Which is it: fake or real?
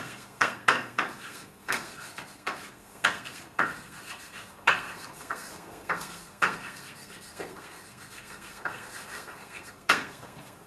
fake